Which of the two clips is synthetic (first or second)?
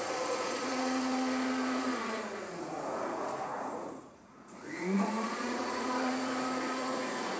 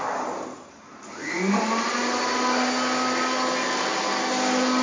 first